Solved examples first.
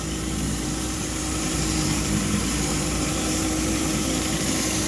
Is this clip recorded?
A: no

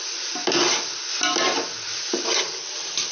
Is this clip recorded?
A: yes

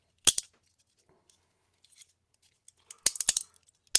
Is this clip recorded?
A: yes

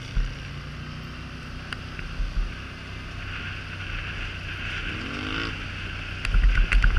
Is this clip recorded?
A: yes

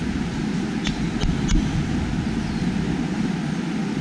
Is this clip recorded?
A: yes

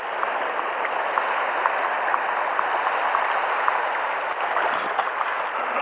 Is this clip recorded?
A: yes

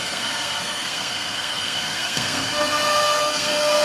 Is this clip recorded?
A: no